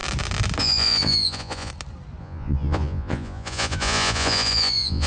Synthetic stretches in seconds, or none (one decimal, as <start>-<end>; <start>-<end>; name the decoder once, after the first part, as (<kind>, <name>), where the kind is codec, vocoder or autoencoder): 0.6-1.7 (vocoder, Vocos); 2.2-5.1